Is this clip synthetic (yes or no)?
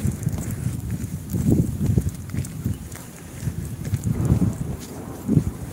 yes